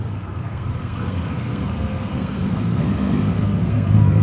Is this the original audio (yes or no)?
no